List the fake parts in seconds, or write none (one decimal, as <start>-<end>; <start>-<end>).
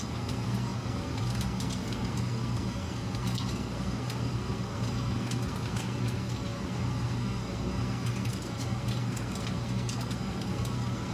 0.0-11.1